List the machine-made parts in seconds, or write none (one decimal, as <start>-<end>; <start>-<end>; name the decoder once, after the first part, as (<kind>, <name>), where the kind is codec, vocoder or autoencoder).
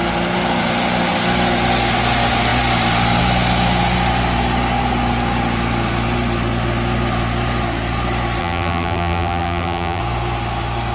8.4-10.0 (vocoder, BigVGAN v2)